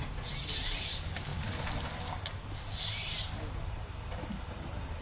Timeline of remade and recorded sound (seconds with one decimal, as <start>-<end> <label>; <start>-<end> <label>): 0.0-5.0 recorded